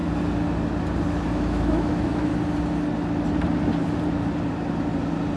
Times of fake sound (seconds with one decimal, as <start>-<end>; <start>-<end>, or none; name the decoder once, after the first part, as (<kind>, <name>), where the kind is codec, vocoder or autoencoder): 1.3-2.3 (autoencoder, DAC-VAE)